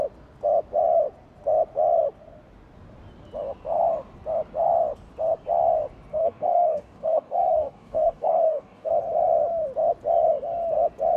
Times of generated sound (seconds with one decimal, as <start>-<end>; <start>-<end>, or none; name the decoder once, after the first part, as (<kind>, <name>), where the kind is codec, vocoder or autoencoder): 6.1-8.9 (codec, DAC)